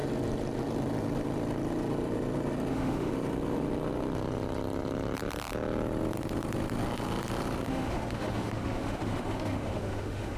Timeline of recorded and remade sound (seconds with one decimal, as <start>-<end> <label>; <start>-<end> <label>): 0.0-2.7 recorded; 2.7-3.1 remade; 3.1-7.7 recorded; 7.7-10.4 remade

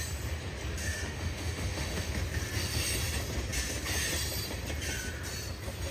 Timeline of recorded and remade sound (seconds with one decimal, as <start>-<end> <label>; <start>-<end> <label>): 0.0-0.8 recorded; 0.8-2.1 remade; 2.1-5.9 recorded

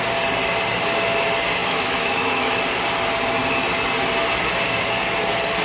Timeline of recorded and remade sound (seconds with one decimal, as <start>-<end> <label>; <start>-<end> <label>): 0.0-1.6 recorded; 1.6-2.6 remade; 2.6-5.6 recorded

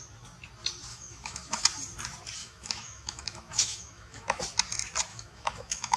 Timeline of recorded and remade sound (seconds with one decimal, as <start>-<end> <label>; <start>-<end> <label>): 0.0-0.9 recorded; 0.9-1.6 remade; 1.6-2.4 recorded; 2.4-4.4 remade; 4.4-5.1 recorded; 5.1-6.0 remade

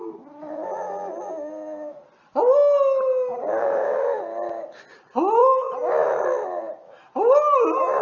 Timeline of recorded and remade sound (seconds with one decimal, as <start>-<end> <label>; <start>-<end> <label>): 0.0-3.6 recorded; 3.6-4.2 remade; 4.2-8.0 recorded

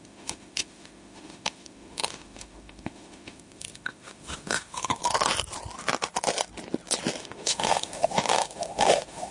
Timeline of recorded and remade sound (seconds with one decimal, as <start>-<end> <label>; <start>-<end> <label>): 0.0-5.0 remade; 5.0-7.2 recorded; 7.2-9.3 remade

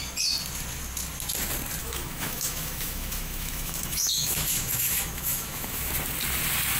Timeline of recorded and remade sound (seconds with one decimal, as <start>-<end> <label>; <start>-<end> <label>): 0.0-1.8 recorded; 1.8-5.9 remade; 5.9-6.8 recorded

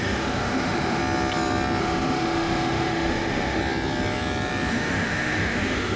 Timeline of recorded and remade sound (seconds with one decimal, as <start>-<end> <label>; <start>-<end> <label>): 0.0-1.0 remade; 1.0-1.8 recorded; 1.8-3.6 remade; 3.6-4.7 recorded; 4.7-6.0 remade